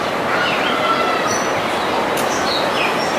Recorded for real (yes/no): yes